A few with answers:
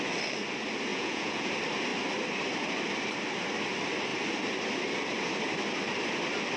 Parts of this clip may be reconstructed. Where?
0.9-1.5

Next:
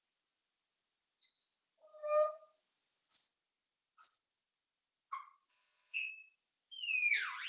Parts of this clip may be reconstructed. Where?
5.5-6.1

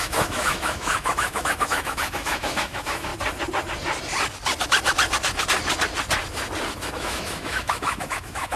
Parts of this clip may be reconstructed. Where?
0.0-3.1; 6.9-8.6

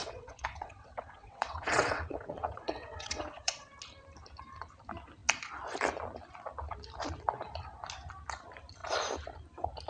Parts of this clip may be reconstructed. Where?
0.0-3.7

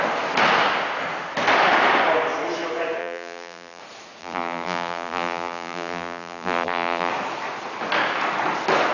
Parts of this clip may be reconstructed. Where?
3.0-3.8; 4.2-7.1

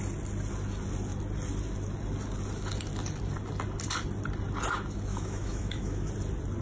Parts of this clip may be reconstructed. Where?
5.1-6.1

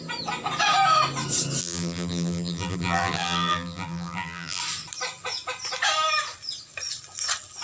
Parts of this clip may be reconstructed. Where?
1.6-4.6

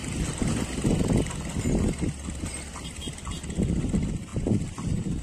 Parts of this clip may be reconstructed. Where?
none